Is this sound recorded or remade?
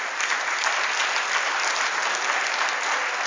recorded